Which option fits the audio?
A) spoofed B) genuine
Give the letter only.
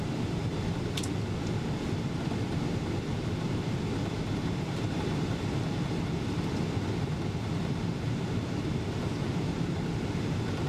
B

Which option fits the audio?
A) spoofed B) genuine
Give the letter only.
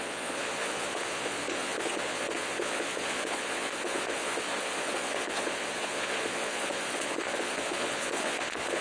A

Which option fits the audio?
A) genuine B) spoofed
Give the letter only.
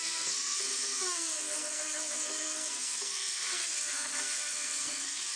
B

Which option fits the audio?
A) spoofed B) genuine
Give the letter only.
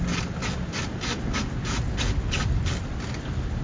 B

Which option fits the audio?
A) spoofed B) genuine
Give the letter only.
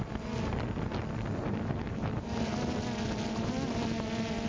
B